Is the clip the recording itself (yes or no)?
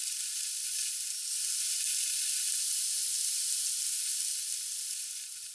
yes